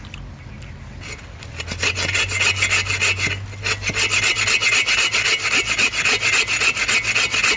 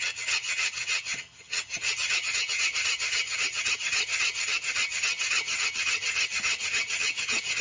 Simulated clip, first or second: second